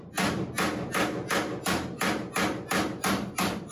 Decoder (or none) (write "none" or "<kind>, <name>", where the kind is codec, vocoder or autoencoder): none